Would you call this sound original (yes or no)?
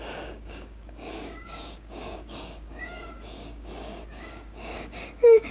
no